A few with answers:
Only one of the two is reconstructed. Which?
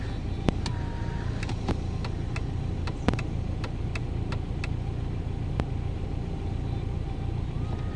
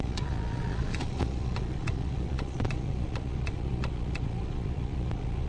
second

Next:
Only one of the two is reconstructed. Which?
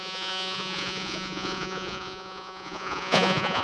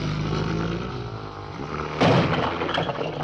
first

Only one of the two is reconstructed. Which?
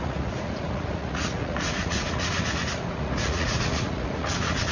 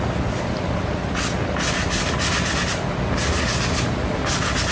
first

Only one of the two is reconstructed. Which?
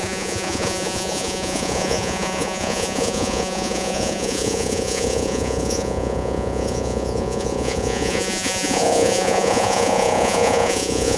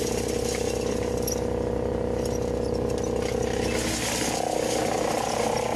first